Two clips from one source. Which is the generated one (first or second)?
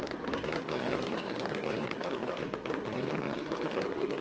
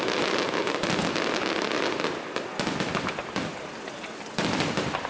first